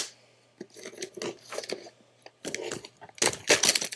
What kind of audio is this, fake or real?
real